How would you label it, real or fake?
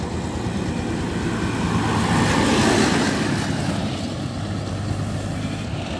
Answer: real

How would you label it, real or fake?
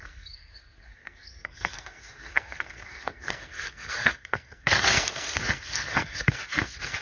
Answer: fake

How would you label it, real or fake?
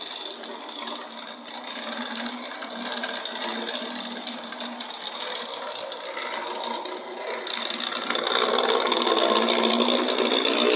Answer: real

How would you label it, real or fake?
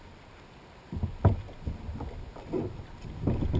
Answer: real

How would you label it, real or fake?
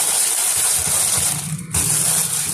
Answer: real